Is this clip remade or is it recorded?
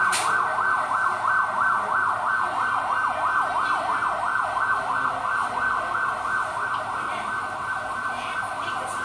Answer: recorded